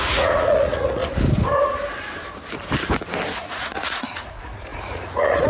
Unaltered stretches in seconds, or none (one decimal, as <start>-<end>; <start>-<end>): 1.0-3.4